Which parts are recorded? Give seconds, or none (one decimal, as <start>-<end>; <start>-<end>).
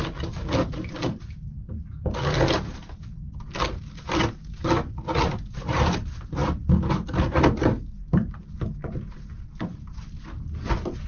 0.0-11.1